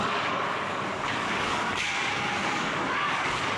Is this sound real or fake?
fake